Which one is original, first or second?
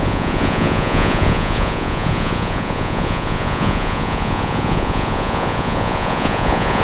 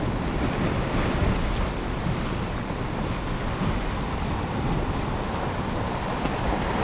second